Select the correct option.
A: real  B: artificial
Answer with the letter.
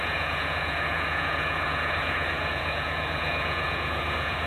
B